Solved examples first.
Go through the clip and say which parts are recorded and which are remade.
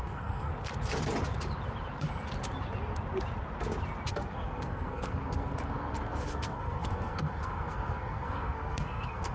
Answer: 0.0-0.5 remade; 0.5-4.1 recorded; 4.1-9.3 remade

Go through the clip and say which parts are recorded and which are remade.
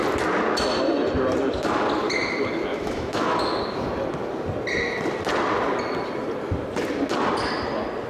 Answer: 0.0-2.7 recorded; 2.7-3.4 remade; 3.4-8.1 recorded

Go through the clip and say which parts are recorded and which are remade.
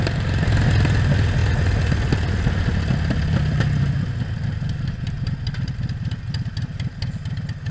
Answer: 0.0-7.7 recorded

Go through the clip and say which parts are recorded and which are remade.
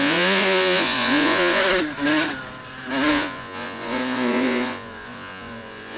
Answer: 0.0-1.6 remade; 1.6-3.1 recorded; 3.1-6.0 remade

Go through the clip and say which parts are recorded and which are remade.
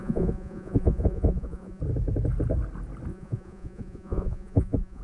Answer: 0.0-1.8 remade; 1.8-3.1 recorded; 3.1-5.0 remade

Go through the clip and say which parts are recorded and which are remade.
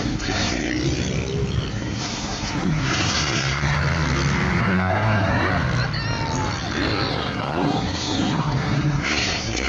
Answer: 0.0-0.7 remade; 0.7-1.7 recorded; 1.7-3.8 remade; 3.8-4.6 recorded; 4.6-5.5 remade; 5.5-7.1 recorded; 7.1-9.7 remade